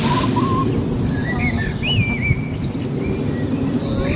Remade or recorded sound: recorded